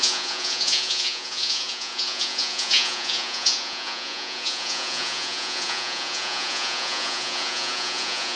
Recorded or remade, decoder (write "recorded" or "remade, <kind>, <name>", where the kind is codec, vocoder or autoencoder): remade, vocoder, Vocos